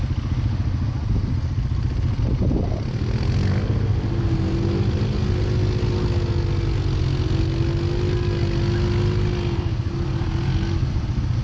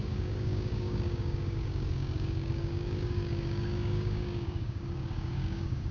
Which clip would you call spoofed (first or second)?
second